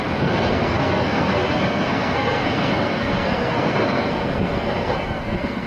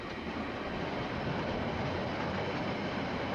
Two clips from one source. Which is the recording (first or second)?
second